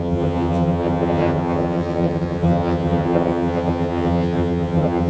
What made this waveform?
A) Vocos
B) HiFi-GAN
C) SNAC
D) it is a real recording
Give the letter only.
B